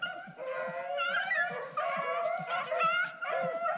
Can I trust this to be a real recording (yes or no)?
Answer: yes